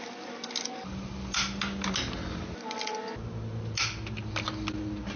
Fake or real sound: real